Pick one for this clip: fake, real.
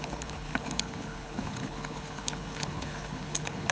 fake